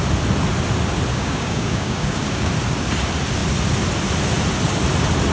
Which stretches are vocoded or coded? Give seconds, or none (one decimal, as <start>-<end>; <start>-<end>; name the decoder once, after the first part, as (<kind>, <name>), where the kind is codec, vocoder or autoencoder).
1.1-2.5 (codec, DAC)